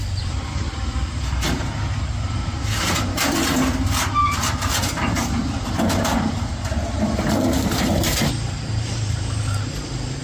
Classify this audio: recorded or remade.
remade